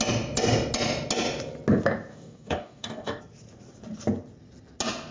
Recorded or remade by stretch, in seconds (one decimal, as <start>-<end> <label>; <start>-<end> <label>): 0.0-2.1 recorded; 2.1-3.2 remade; 3.2-5.1 recorded